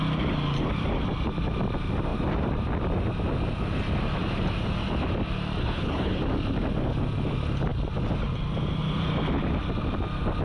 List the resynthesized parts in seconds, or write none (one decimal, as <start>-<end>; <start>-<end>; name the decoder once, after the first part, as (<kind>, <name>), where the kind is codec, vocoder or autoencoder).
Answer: 5.6-6.2 (codec, HILCodec)